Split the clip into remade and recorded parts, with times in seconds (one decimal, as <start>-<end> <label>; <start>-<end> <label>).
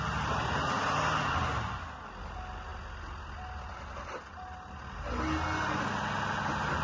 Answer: 0.0-6.8 recorded